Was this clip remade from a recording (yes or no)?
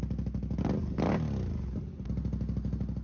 no